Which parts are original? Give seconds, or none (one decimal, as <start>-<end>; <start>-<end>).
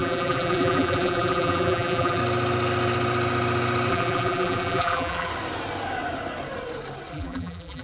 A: 2.2-3.9; 5.3-7.1